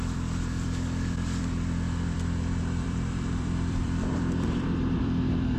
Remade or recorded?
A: remade